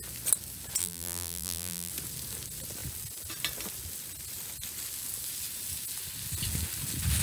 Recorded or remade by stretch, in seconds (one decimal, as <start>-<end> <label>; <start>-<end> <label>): 0.0-0.8 recorded; 0.8-1.9 remade; 1.9-7.2 recorded